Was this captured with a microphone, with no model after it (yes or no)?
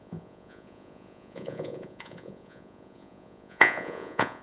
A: no